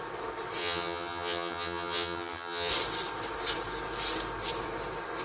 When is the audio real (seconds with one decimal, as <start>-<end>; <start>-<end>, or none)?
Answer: 0.0-0.6; 2.7-5.2